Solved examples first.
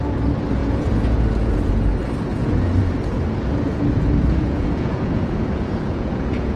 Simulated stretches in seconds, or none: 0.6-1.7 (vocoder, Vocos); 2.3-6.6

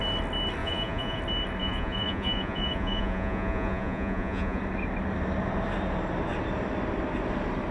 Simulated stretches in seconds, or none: 0.6-1.2 (vocoder, Vocos); 1.6-4.6

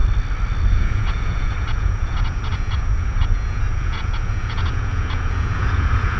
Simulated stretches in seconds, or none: 0.7-6.2 (vocoder, Vocos)

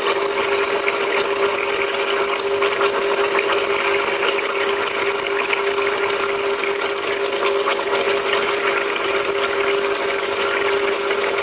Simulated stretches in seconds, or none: none